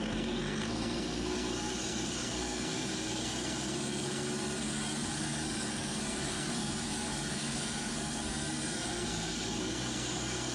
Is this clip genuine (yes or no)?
no